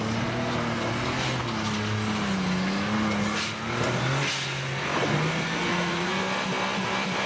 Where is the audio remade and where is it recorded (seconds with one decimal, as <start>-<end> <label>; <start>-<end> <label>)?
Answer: 0.0-5.7 recorded; 5.7-6.2 remade; 6.2-7.3 recorded